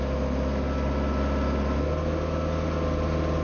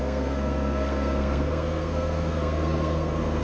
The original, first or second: first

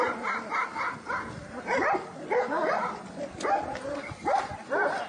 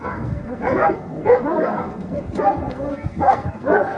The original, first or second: first